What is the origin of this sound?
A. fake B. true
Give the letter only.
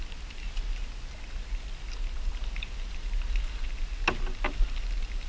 B